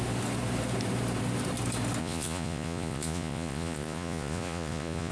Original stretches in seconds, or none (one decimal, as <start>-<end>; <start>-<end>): 0.0-2.0